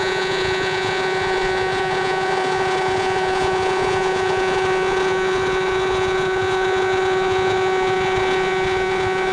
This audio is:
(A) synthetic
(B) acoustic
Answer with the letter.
A